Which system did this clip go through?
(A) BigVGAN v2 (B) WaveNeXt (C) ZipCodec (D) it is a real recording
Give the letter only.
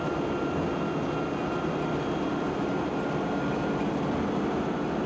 D